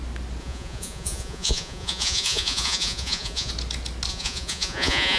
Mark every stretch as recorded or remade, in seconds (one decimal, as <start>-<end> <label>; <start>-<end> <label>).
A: 0.0-0.4 recorded; 0.4-3.5 remade; 3.5-4.1 recorded; 4.1-5.2 remade